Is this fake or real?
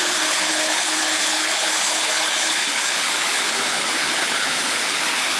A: fake